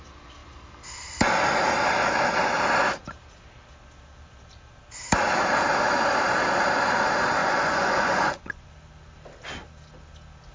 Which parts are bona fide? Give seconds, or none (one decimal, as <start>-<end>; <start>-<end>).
0.0-7.4; 8.7-10.5

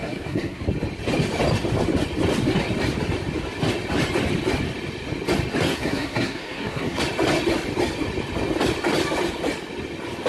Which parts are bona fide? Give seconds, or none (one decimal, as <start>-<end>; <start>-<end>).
0.6-5.7; 7.0-10.3

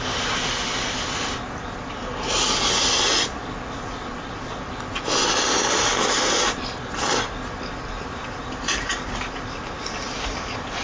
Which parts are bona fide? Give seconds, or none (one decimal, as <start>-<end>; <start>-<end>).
0.0-10.8

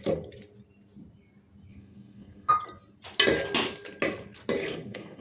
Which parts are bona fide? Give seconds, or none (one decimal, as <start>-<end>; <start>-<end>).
0.0-1.7; 2.5-4.6

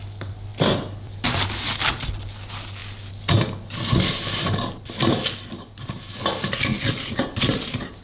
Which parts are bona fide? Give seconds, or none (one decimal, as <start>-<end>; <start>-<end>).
0.0-8.0